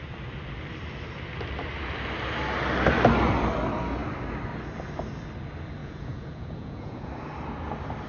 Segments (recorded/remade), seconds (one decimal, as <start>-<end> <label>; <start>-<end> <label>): 0.0-5.8 recorded; 5.8-7.1 remade; 7.1-8.1 recorded